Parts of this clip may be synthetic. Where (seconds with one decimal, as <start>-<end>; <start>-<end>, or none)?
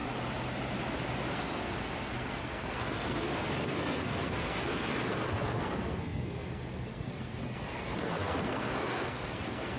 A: 1.3-9.8